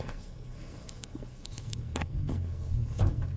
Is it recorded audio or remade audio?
remade